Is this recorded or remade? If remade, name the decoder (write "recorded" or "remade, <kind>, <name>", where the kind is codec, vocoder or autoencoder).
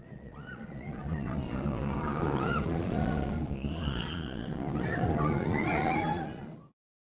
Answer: remade, vocoder, Vocos